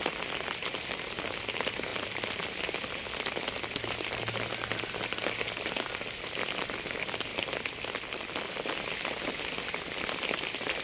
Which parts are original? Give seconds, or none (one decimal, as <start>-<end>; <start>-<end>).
0.0-7.3; 7.9-10.8